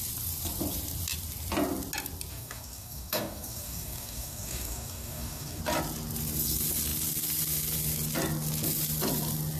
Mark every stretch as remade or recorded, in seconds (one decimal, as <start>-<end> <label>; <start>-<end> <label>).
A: 0.0-2.3 recorded; 2.3-5.6 remade; 5.6-9.6 recorded